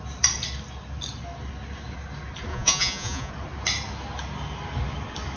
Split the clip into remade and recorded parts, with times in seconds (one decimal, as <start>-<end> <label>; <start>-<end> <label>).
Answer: 0.0-2.5 recorded; 2.5-3.3 remade; 3.3-5.4 recorded